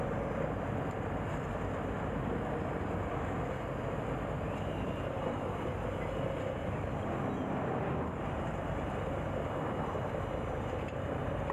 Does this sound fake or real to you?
real